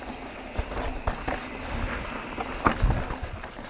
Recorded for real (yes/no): yes